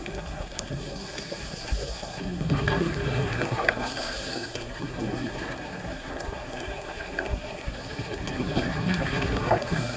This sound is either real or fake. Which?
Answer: fake